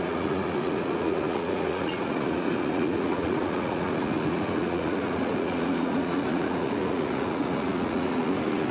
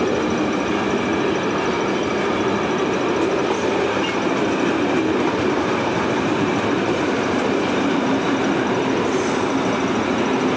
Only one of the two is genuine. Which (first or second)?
second